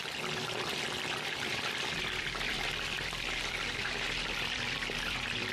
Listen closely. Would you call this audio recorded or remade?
remade